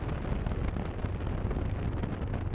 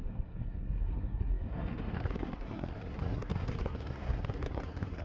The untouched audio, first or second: first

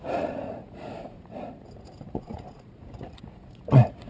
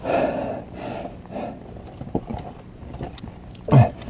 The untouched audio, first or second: second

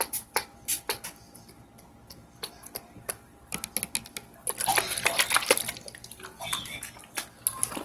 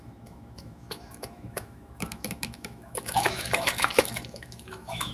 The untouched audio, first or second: first